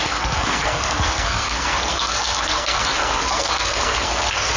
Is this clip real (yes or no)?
no